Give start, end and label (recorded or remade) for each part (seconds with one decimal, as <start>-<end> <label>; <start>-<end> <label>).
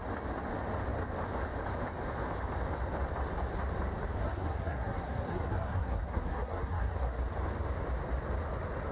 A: 0.0-4.2 recorded; 4.2-7.2 remade; 7.2-8.9 recorded